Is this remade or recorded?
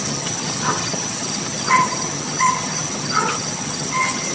remade